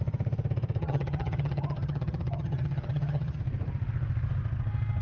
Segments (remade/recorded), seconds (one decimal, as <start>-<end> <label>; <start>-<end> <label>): 0.0-0.8 recorded; 0.8-3.4 remade; 3.4-5.0 recorded